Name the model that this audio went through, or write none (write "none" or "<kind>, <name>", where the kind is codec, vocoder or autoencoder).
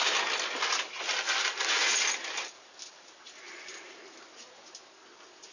none